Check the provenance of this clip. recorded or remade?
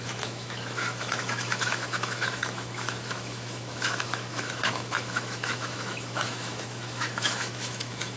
remade